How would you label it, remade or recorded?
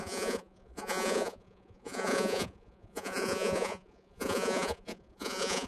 remade